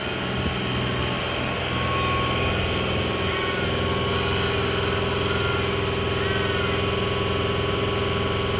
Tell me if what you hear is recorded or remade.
recorded